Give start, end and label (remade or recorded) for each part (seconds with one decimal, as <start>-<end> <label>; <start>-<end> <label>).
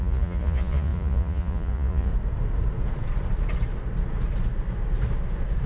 0.0-2.1 remade; 2.1-5.7 recorded